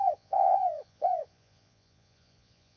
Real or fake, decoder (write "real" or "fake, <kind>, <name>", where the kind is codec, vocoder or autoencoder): fake, vocoder, Vocos